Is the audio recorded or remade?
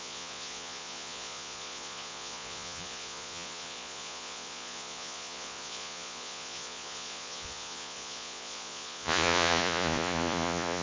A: remade